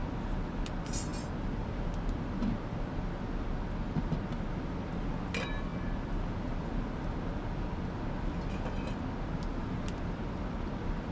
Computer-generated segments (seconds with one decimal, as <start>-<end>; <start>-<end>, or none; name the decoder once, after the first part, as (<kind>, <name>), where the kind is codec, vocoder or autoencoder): none

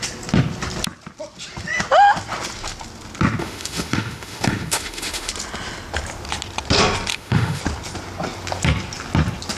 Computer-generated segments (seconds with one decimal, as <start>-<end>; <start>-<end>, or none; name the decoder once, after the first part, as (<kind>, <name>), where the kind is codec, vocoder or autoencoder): 3.4-5.3 (autoencoder, DAC-VAE); 7.1-7.6

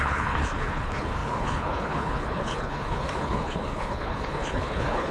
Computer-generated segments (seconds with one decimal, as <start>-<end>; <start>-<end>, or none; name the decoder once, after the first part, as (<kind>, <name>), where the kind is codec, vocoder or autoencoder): 0.0-5.1 (codec, HILCodec)

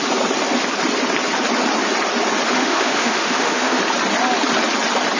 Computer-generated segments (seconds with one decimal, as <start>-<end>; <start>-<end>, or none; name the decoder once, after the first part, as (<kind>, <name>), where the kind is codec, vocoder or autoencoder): 2.6-3.8 (autoencoder, DAC-VAE)

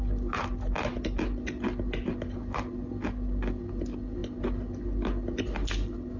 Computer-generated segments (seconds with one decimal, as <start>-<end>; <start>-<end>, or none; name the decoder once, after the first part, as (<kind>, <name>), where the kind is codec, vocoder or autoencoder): none

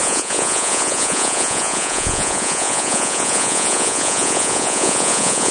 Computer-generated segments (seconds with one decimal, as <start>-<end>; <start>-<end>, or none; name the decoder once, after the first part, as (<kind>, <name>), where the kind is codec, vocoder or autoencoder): 0.0-5.5 (vocoder, Vocos)

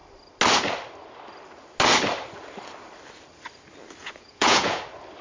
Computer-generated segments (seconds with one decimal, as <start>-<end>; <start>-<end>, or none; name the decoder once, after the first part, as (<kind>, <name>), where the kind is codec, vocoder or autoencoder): 4.0-4.8 (vocoder, Vocos)